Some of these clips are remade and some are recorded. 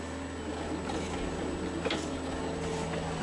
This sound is recorded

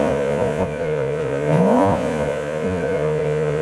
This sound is remade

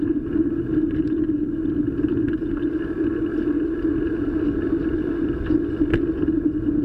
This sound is recorded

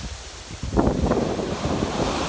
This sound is recorded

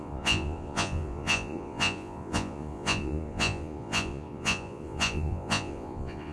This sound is remade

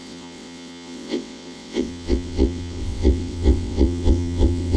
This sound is remade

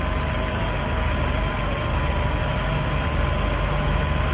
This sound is recorded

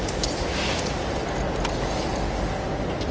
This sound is recorded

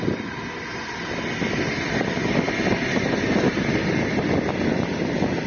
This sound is recorded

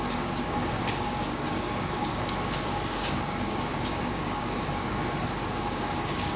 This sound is remade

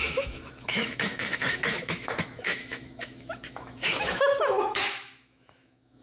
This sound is remade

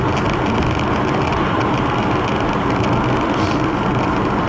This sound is recorded